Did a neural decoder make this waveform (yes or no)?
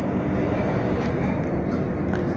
no